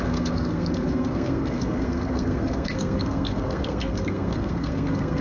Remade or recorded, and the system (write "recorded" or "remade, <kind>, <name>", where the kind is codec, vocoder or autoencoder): remade, codec, SNAC